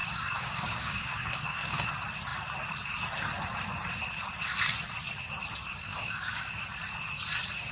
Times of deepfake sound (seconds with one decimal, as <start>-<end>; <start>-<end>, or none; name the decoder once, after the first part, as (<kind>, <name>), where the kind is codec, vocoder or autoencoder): 0.0-1.9 (codec, DAC); 5.9-6.5